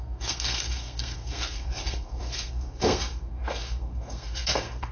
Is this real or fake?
fake